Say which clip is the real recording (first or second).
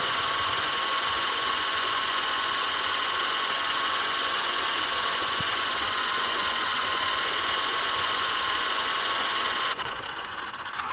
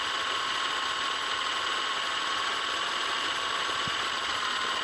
second